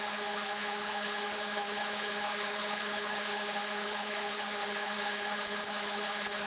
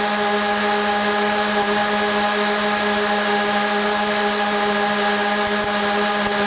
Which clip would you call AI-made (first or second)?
first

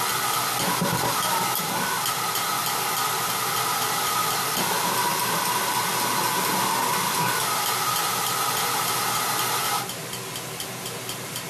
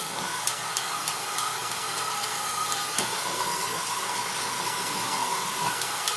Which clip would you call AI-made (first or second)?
second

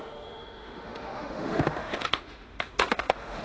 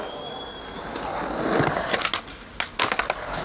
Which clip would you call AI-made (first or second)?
first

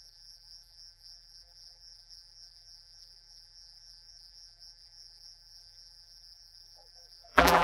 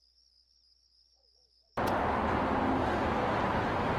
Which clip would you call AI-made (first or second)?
first